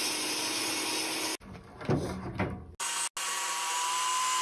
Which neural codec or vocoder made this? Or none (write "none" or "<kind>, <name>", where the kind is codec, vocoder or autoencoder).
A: none